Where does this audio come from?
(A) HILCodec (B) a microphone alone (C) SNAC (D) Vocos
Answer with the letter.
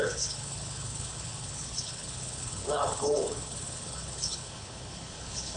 A